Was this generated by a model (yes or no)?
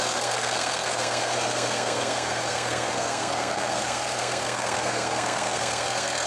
yes